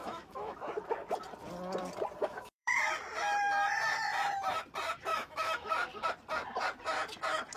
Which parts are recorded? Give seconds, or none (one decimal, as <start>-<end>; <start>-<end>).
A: 0.7-2.2; 2.8-5.1; 5.7-7.6